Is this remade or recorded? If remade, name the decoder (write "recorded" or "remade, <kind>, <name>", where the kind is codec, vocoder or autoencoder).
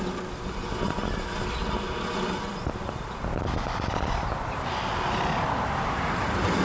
recorded